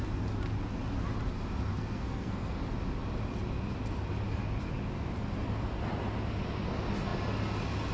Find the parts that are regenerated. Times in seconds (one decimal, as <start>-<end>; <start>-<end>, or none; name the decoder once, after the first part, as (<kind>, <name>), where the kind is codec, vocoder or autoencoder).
1.7-2.6 (codec, SNAC)